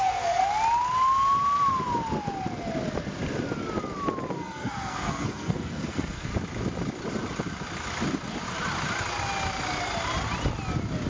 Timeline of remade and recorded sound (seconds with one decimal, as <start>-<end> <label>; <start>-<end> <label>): 0.0-0.4 remade; 0.4-4.3 recorded; 4.3-6.3 remade; 6.3-11.1 recorded